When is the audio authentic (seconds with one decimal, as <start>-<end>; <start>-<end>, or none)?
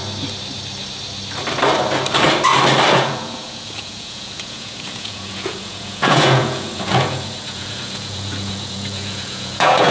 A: 0.0-2.9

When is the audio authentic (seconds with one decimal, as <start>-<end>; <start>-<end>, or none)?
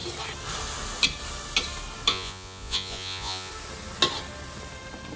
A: 0.0-2.1; 3.5-5.2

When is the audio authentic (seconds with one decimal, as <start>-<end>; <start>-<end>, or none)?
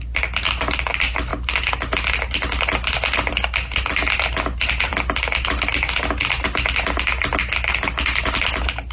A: 0.0-8.9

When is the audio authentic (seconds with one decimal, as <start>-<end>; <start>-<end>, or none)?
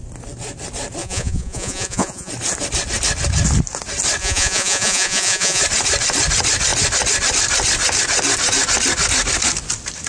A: 0.0-1.0; 2.3-4.2; 5.6-10.1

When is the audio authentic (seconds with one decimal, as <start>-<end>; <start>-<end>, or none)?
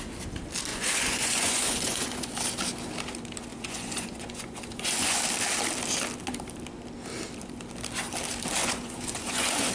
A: 0.0-0.7; 2.3-3.5; 5.2-8.6